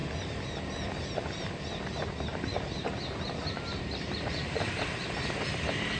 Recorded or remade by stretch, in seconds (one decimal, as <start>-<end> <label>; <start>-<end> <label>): 0.0-2.3 recorded; 2.3-5.6 remade; 5.6-6.0 recorded